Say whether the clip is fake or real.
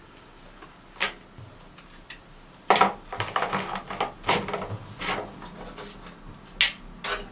real